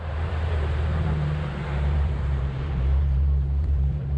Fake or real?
fake